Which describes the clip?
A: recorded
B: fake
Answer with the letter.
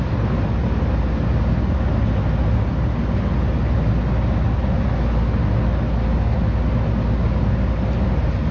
A